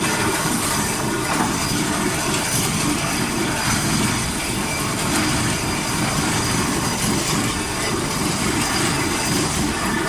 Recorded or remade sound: recorded